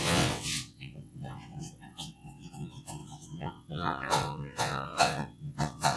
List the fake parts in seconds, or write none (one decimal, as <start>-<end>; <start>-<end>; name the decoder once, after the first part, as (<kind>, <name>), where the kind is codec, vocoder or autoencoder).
0.0-6.0 (vocoder, WaveNeXt)